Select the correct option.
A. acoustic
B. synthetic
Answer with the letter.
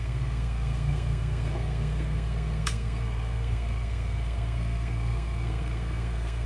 B